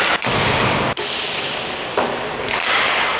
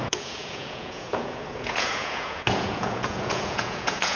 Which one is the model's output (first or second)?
second